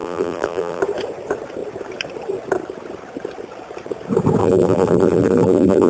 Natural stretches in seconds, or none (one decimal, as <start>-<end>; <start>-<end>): 0.8-4.4